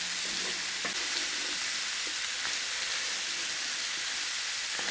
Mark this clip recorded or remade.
recorded